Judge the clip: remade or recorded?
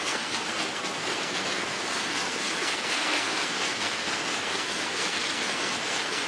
remade